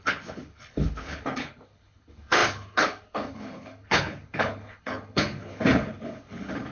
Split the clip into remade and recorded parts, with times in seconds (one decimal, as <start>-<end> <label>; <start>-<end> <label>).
0.0-6.7 remade